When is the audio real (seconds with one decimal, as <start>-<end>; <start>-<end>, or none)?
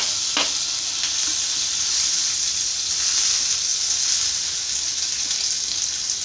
0.0-6.2